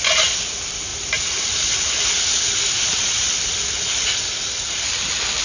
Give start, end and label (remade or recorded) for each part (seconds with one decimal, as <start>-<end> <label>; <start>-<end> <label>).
0.0-0.9 recorded; 0.9-1.8 remade; 1.8-5.4 recorded